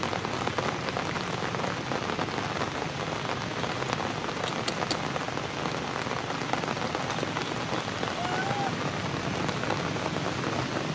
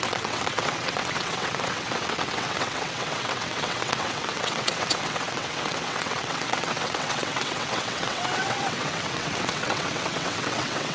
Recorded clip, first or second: first